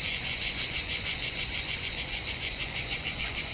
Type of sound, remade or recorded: remade